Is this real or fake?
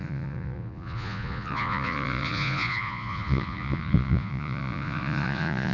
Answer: fake